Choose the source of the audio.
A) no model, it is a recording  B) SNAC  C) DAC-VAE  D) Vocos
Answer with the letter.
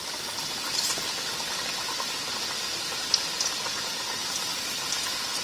A